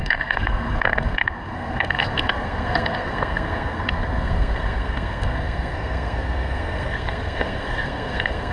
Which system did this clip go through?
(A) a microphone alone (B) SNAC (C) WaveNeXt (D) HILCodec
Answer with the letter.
B